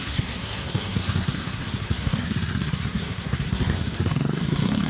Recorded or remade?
remade